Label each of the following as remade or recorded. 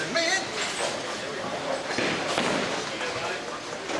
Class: recorded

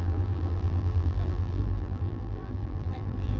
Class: remade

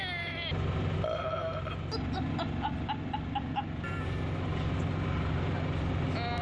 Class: recorded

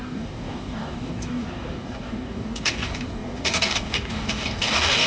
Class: remade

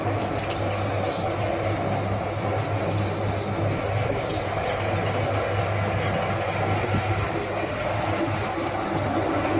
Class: recorded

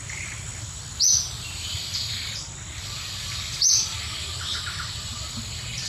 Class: recorded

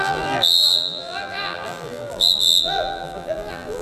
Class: remade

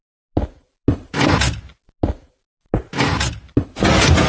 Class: recorded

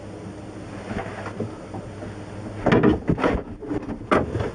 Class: recorded